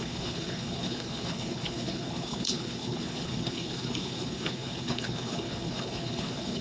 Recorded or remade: remade